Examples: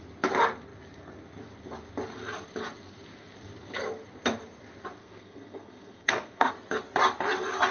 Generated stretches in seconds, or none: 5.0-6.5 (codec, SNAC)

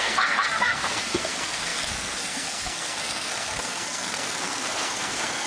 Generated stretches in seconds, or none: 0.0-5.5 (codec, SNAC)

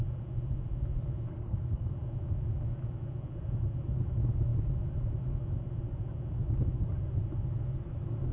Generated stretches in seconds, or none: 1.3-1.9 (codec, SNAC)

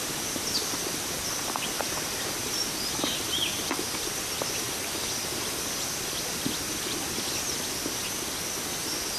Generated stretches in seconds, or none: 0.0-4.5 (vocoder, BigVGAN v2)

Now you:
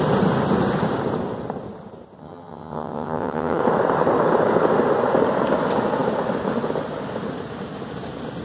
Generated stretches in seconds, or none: 2.2-3.6 (vocoder, HiFi-GAN)

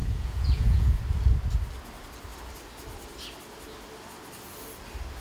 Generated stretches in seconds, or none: 0.0-1.0 (vocoder, Vocos)